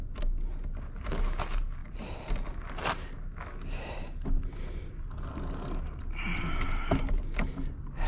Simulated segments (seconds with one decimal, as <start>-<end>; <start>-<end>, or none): 1.8-2.6